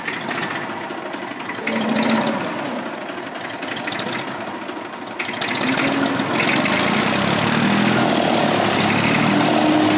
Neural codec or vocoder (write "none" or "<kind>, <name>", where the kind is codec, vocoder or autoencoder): none